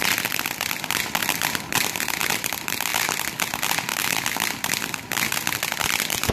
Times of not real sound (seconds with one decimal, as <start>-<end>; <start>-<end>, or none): 1.2-2.3